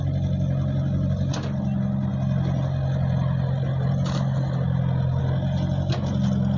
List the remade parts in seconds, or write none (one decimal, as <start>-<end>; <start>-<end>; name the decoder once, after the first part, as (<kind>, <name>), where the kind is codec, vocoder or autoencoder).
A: none